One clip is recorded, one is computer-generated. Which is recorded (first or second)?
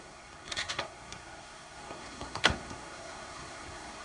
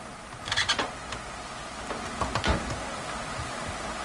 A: second